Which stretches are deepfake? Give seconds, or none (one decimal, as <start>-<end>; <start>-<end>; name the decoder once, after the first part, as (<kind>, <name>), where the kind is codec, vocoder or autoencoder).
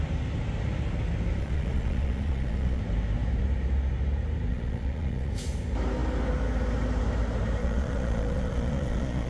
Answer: 1.4-2.8 (vocoder, Vocos); 4.5-5.3; 7.6-9.3